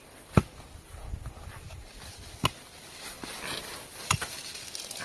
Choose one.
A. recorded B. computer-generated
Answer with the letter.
A